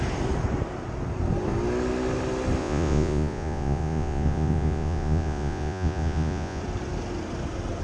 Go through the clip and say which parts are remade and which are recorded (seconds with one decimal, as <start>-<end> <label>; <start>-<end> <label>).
0.0-2.6 recorded; 2.6-6.6 remade; 6.6-7.8 recorded